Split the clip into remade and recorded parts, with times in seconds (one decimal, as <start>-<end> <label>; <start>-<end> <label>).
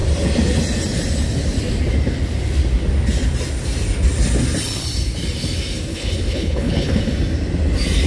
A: 0.0-5.9 recorded; 5.9-7.0 remade; 7.0-8.1 recorded